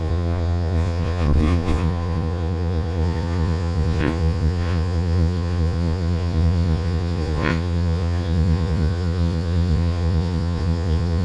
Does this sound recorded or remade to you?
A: remade